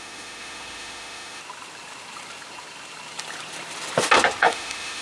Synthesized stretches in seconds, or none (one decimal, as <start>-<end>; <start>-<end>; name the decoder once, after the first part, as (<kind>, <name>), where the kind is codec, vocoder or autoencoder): 0.0-1.4 (autoencoder, DAC-VAE); 4.4-5.0